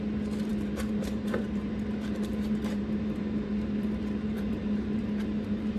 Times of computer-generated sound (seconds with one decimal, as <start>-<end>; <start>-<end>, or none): 0.5-1.7; 2.3-5.8